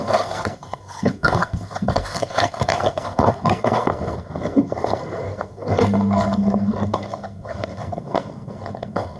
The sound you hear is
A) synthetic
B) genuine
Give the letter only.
A